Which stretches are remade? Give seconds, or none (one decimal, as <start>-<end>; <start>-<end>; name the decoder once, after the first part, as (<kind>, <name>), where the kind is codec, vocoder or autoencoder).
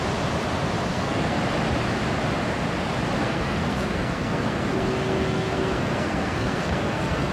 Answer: 0.9-1.4 (codec, SNAC); 3.2-7.3